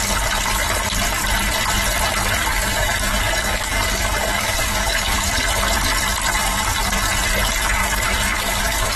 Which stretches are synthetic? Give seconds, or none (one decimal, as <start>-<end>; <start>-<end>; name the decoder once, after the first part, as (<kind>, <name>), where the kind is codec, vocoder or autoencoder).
2.5-5.3 (codec, DAC); 6.4-7.0; 7.8-9.0